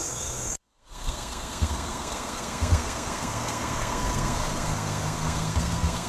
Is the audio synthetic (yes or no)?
yes